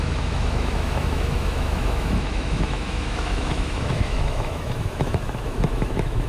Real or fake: fake